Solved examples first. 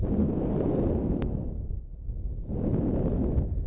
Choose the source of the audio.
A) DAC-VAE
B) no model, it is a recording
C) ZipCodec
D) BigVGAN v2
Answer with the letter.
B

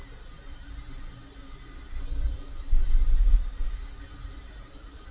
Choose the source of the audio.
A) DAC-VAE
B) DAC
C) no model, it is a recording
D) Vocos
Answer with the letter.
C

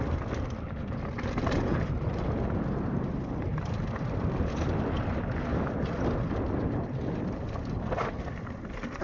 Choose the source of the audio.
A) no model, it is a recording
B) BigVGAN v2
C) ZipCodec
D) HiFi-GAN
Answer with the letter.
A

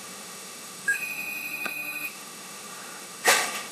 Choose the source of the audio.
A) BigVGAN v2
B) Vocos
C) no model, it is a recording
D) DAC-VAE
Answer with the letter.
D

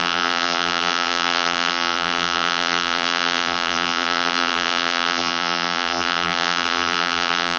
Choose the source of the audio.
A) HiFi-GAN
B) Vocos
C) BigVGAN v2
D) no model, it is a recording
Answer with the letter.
C